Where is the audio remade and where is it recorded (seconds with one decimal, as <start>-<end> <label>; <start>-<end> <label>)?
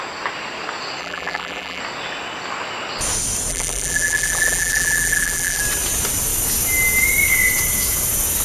0.0-1.0 recorded; 1.0-1.8 remade; 1.8-3.5 recorded; 3.5-5.6 remade; 5.6-8.4 recorded